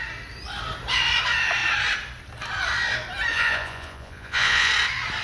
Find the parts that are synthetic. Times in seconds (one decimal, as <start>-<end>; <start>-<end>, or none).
3.3-4.7